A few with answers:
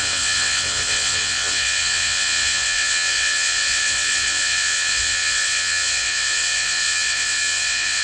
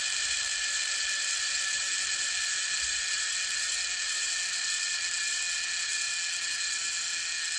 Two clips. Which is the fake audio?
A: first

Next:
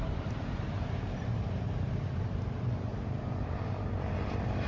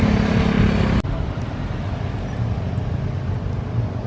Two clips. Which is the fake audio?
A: first